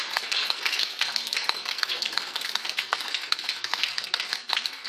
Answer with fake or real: fake